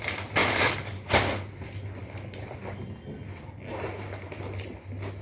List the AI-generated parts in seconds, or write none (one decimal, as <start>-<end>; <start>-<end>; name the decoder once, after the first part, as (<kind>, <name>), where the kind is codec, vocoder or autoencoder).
none